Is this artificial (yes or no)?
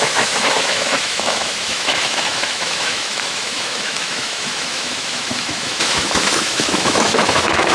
yes